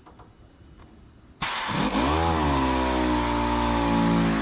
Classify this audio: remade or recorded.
recorded